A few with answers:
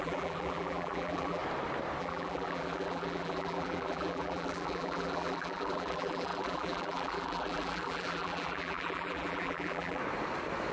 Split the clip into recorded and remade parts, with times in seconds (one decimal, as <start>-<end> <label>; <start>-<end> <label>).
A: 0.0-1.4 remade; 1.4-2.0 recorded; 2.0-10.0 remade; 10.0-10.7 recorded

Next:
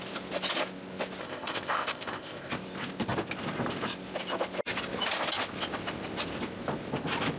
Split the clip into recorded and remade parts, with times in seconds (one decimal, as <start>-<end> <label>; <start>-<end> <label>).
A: 0.0-1.2 recorded; 1.2-2.5 remade; 2.5-7.4 recorded

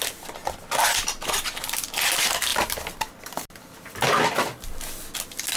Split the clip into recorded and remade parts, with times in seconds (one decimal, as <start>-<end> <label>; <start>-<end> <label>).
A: 0.0-5.6 recorded

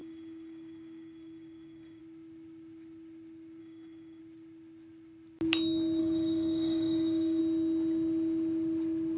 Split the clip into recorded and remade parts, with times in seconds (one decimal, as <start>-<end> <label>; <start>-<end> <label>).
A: 0.0-2.0 remade; 2.0-3.6 recorded; 3.6-4.2 remade; 4.2-6.0 recorded; 6.0-7.4 remade; 7.4-9.2 recorded

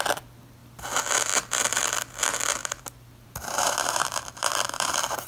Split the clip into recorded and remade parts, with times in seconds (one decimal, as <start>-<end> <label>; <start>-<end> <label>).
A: 0.0-2.6 recorded; 2.6-5.3 remade